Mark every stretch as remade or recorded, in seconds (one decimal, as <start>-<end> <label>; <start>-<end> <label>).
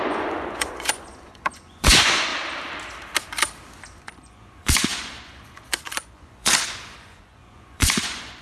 0.0-2.3 remade; 2.3-4.0 recorded; 4.0-8.4 remade